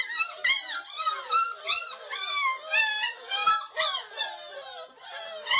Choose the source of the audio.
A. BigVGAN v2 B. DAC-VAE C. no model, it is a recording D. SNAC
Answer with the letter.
C